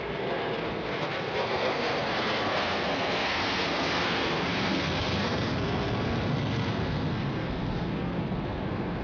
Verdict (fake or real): fake